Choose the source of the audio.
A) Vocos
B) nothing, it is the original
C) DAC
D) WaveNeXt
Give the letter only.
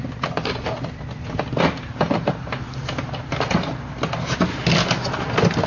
B